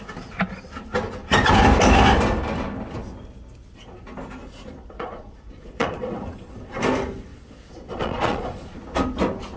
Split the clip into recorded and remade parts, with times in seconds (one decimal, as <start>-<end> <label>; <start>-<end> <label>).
0.0-4.4 recorded; 4.4-6.8 remade; 6.8-7.3 recorded; 7.3-8.8 remade; 8.8-9.6 recorded